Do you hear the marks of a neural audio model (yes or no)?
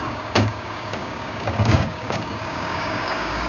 yes